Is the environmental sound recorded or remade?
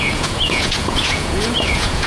remade